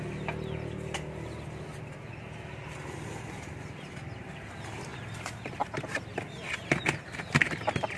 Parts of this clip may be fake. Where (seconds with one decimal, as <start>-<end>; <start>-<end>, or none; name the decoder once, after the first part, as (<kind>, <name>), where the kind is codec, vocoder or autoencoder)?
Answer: none